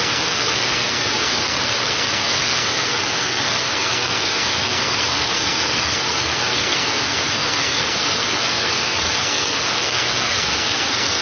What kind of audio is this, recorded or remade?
remade